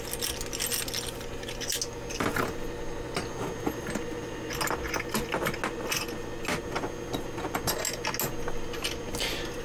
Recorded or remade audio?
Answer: recorded